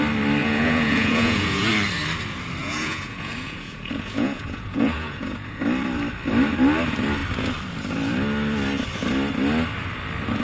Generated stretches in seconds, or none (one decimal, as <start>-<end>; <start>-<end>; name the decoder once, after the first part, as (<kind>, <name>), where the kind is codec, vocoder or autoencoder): 0.4-1.7 (vocoder, Vocos); 2.6-5.6

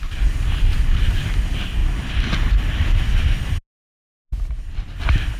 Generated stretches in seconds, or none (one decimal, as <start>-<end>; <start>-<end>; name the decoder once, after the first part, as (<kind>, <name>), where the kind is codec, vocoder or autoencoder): 0.7-1.4 (vocoder, BigVGAN v2)

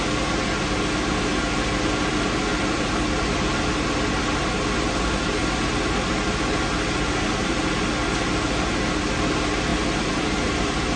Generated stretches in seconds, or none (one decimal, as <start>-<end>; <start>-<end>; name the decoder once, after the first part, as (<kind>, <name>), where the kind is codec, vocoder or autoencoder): 2.5-3.5 (vocoder, BigVGAN v2); 9.7-11.0

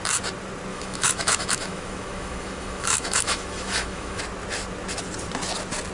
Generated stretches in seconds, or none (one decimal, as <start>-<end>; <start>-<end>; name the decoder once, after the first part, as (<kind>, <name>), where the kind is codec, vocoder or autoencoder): 0.7-4.2 (autoencoder, DAC-VAE)

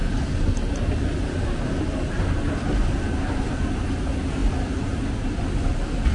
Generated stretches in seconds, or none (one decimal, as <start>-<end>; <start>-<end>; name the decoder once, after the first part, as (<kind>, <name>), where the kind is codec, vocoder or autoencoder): none

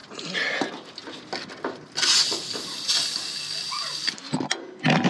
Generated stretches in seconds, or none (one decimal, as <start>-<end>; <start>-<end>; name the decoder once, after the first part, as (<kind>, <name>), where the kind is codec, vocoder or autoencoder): none

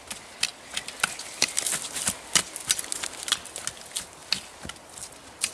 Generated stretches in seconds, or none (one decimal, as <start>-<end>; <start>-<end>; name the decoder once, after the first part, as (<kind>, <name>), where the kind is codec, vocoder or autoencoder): none

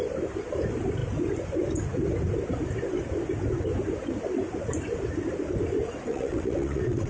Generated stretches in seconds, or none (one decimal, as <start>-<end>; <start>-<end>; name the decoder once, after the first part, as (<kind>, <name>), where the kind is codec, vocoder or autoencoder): 6.1-7.1 (vocoder, WaveNeXt)